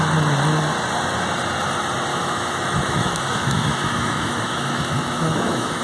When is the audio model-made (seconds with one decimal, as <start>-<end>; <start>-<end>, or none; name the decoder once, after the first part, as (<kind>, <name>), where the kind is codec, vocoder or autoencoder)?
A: 2.1-5.8 (autoencoder, DAC-VAE)